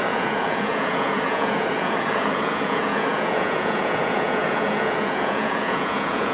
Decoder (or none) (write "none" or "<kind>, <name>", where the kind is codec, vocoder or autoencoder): vocoder, Vocos